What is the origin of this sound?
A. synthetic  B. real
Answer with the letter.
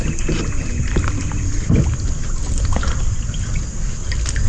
B